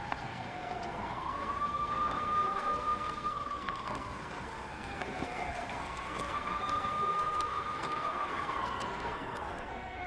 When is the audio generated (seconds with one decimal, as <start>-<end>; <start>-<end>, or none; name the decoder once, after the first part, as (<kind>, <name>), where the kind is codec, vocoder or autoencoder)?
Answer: 0.0-10.1 (codec, SNAC)